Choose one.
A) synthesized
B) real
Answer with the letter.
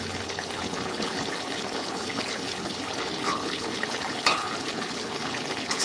A